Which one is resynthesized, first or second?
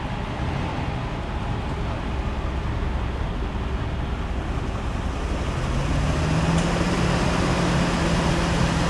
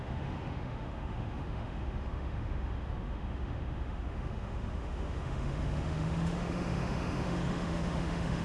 second